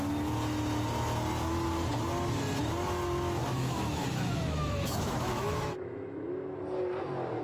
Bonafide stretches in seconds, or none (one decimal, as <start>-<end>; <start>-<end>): 0.0-3.4; 6.6-7.4